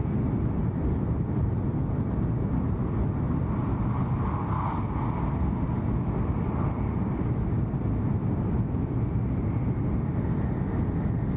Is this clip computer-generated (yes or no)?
no